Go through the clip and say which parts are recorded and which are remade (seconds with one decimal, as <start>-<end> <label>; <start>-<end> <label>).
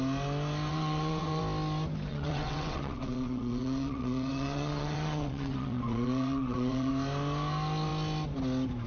0.0-0.7 recorded; 0.7-1.4 remade; 1.4-2.1 recorded; 2.1-6.9 remade; 6.9-8.9 recorded